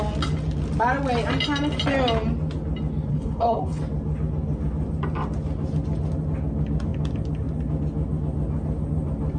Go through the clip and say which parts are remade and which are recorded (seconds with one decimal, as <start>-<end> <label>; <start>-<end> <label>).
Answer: 0.0-3.1 recorded; 3.1-3.8 remade; 3.8-9.4 recorded